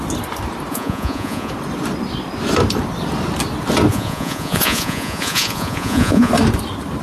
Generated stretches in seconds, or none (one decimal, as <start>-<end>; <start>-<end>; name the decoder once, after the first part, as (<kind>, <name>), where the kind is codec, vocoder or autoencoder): 0.7-1.5 (vocoder, Vocos); 3.9-6.3